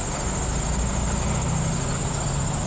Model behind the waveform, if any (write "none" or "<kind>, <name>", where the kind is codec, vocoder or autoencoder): none